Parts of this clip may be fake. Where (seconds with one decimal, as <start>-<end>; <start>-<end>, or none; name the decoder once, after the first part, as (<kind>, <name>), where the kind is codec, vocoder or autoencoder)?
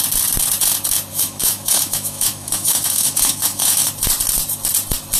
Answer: 1.1-3.9 (autoencoder, DAC-VAE)